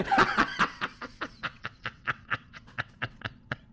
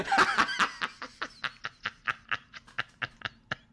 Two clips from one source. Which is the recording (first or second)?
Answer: second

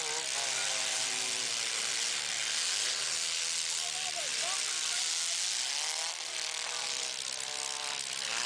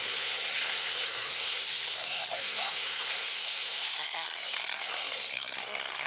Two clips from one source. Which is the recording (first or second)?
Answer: first